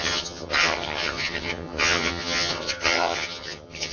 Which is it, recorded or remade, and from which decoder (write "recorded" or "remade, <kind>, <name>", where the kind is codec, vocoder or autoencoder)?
remade, vocoder, HiFi-GAN